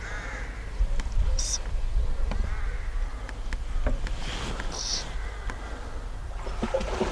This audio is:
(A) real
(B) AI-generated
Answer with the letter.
A